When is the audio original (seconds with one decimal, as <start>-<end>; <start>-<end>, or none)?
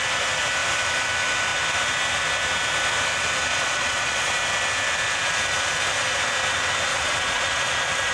0.0-3.5; 4.3-6.9